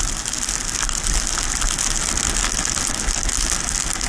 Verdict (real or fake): real